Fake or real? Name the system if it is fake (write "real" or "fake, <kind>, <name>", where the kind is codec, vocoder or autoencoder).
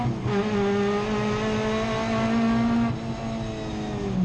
real